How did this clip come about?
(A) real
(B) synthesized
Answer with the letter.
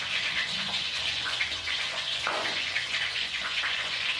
B